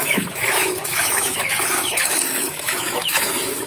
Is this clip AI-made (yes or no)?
yes